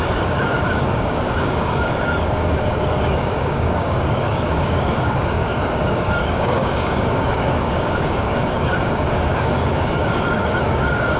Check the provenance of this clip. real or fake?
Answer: fake